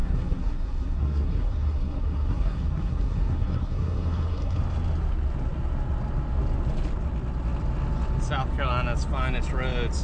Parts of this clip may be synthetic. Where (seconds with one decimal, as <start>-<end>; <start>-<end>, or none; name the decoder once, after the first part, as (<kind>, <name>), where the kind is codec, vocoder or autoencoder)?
0.0-4.6 (codec, SNAC)